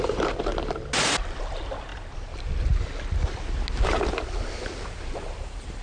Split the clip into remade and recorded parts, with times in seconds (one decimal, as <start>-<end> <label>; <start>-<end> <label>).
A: 0.0-0.5 remade; 0.5-1.4 recorded; 1.4-1.9 remade; 1.9-4.5 recorded; 4.5-5.8 remade